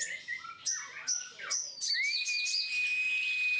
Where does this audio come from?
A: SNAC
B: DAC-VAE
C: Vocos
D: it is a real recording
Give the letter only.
D